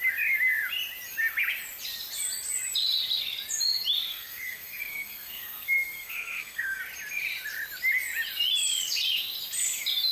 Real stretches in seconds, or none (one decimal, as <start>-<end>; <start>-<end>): 0.0-4.1; 6.8-10.1